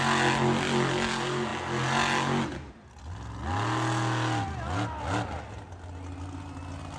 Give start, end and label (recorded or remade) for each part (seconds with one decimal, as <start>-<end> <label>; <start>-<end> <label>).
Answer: 0.0-7.0 recorded